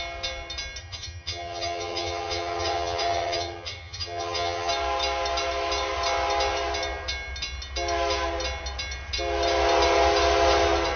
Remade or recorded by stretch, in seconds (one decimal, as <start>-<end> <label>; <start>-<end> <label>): 0.0-0.8 recorded; 0.8-4.7 remade; 4.7-11.0 recorded